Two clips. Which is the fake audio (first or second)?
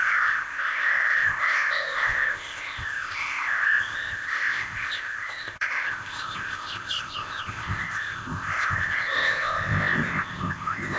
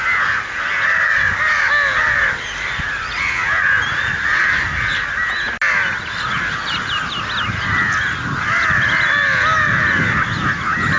first